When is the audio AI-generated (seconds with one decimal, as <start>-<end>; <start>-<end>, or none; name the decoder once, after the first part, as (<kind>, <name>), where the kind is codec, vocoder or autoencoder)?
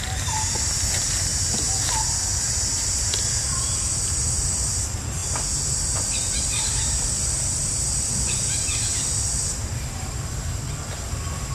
0.0-1.3 (vocoder, BigVGAN v2); 3.0-5.2; 6.1-8.7; 10.0-11.5